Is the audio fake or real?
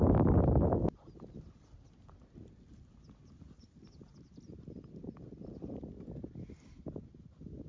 real